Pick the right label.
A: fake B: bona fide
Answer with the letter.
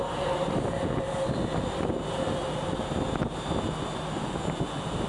B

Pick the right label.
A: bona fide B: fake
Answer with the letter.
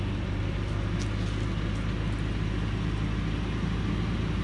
A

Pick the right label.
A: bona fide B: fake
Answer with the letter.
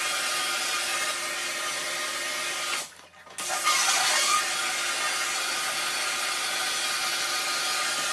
A